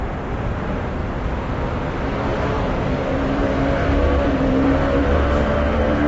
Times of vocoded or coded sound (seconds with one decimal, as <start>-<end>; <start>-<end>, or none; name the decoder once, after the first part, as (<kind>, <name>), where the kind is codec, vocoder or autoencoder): 2.3-6.1 (vocoder, BigVGAN v2)